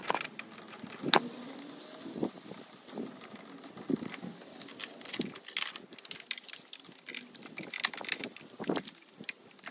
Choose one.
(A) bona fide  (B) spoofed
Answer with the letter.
A